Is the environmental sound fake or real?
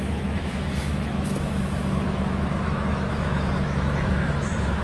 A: fake